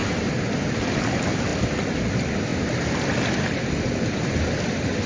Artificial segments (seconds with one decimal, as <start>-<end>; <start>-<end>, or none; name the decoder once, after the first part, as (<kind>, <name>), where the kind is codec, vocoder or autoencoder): 0.6-2.5 (vocoder, BigVGAN v2); 3.7-5.1